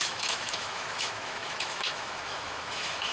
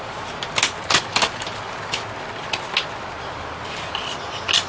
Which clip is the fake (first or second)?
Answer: first